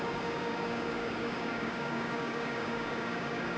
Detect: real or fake fake